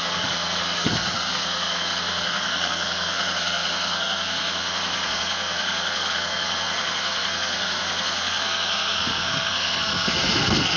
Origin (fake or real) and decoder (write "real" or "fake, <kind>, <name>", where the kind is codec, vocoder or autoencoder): fake, codec, SNAC